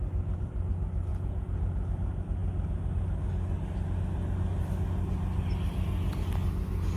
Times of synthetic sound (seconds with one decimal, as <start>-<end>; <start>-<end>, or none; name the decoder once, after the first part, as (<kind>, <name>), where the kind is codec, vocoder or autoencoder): 1.1-1.6 (vocoder, Vocos)